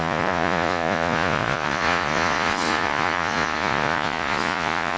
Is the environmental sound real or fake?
fake